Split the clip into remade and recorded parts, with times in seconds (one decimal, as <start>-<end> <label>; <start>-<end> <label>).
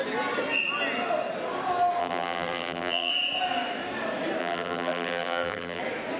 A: 0.0-2.0 recorded; 2.0-3.1 remade; 3.1-4.4 recorded; 4.4-5.8 remade; 5.8-6.2 recorded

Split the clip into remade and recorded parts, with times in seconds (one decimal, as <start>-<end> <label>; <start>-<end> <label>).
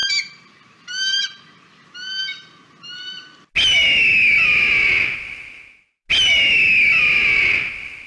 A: 0.0-1.2 remade; 1.2-8.1 recorded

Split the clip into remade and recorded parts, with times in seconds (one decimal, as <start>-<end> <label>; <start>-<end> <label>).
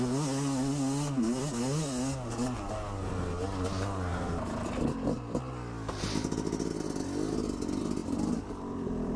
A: 0.0-4.1 recorded; 4.1-4.9 remade; 4.9-8.0 recorded; 8.0-9.2 remade